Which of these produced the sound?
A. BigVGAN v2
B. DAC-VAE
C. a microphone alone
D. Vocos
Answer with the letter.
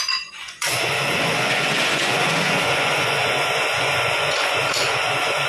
D